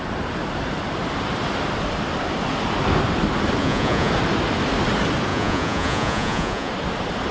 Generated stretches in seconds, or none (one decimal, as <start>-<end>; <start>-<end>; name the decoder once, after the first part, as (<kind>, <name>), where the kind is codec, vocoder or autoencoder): 3.6-4.1 (vocoder, Vocos); 5.3-6.7